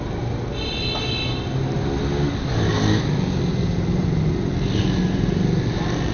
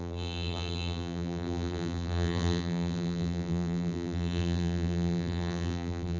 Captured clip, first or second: first